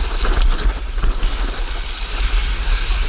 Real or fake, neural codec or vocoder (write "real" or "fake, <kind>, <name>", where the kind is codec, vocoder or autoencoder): real